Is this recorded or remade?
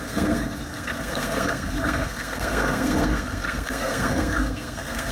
remade